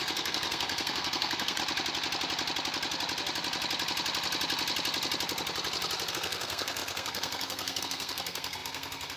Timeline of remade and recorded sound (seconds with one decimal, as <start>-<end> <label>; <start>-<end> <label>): 0.0-1.6 remade; 1.6-6.1 recorded; 6.1-9.2 remade